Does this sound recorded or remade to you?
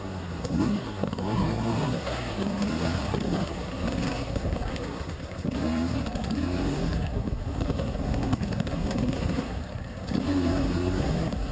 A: remade